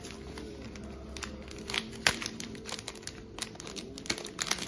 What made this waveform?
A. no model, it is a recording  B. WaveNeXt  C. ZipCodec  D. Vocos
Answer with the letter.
A